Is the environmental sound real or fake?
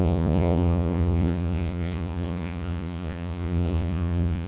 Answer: fake